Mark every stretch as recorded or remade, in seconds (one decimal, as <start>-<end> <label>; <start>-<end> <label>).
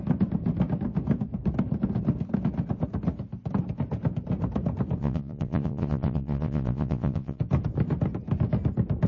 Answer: 0.0-5.0 recorded; 5.0-7.4 remade; 7.4-9.1 recorded